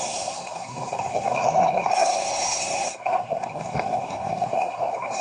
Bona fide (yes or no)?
no